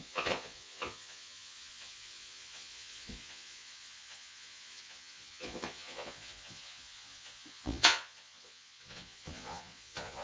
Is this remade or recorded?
remade